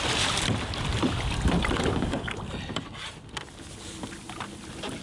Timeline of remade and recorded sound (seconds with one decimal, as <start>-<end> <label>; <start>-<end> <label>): 0.0-1.9 recorded; 1.9-2.4 remade; 2.4-5.0 recorded